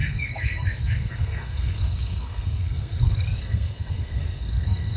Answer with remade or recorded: remade